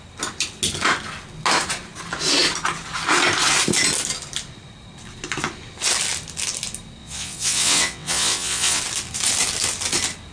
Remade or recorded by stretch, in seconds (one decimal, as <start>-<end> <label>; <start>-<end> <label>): 0.0-7.0 recorded; 7.0-8.8 remade; 8.8-10.3 recorded